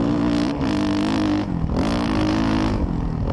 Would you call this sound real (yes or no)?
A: yes